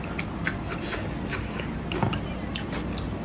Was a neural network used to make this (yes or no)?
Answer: no